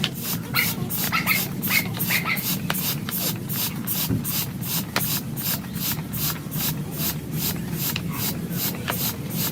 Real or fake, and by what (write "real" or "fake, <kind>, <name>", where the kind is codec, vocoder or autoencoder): real